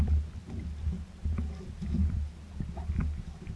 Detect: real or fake real